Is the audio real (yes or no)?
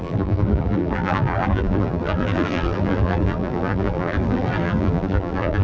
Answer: no